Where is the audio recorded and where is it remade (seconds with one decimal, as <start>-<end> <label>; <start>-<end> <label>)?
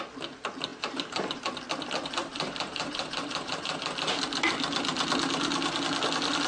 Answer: 0.0-0.7 recorded; 0.7-1.5 remade; 1.5-2.2 recorded; 2.2-3.9 remade; 3.9-6.5 recorded